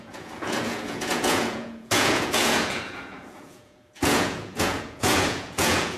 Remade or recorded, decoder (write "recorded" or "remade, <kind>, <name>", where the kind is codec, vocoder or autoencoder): remade, vocoder, Vocos